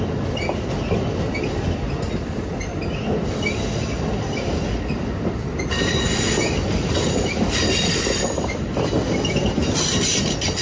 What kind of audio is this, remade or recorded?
recorded